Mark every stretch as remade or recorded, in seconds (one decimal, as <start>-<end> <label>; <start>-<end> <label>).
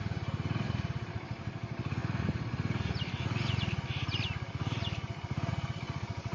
0.0-6.3 recorded